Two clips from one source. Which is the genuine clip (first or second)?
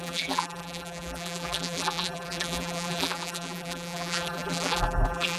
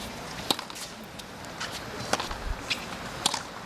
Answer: second